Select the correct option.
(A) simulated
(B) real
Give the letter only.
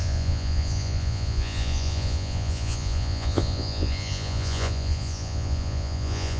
A